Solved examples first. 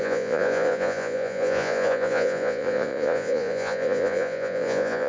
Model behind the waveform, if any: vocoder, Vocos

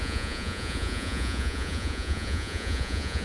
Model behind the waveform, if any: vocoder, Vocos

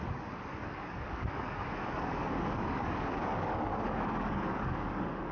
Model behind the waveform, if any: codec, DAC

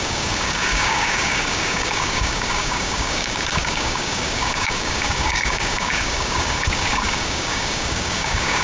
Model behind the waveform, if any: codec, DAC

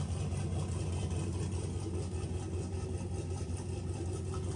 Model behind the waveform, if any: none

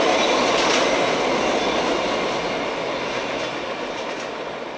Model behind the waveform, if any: none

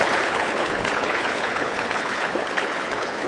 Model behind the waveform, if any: codec, HILCodec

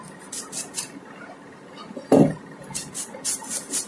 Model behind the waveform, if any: none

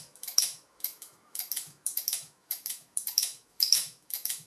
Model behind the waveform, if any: autoencoder, DAC-VAE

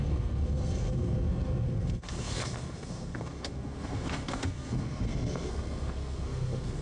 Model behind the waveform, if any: codec, SNAC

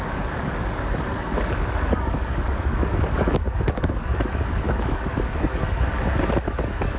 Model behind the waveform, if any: codec, DAC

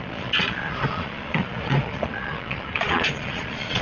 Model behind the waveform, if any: vocoder, Vocos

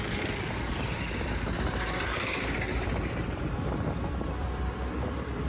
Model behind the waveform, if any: vocoder, BigVGAN v2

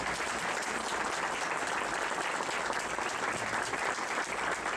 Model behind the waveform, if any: vocoder, BigVGAN v2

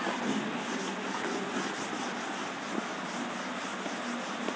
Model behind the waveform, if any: none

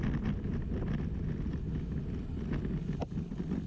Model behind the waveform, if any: none